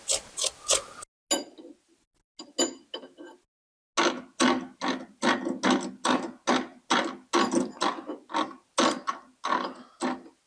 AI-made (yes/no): no